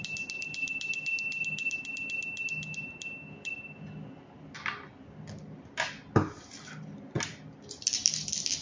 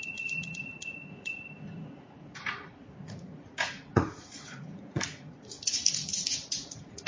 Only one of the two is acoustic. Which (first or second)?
first